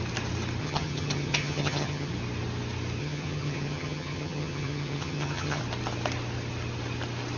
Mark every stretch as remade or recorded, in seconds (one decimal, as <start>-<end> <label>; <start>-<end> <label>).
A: 0.0-0.6 recorded; 0.6-2.1 remade; 2.1-3.0 recorded; 3.0-5.6 remade; 5.6-7.4 recorded